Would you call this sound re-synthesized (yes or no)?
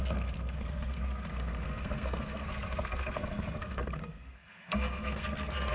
yes